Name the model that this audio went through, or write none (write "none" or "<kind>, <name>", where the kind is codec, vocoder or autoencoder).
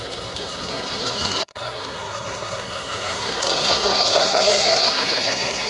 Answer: codec, SNAC